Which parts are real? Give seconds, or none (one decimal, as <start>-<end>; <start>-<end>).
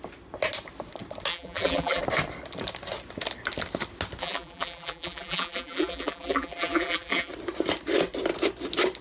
0.0-1.3; 2.0-4.2; 7.3-9.0